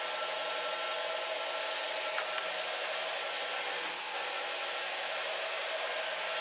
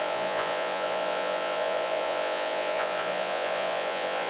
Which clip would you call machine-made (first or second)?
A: second